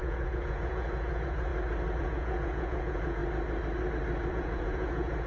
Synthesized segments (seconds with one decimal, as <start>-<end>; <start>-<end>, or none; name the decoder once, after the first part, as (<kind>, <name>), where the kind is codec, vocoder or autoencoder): 0.0-1.5 (vocoder, Vocos); 2.0-3.2; 4.3-5.3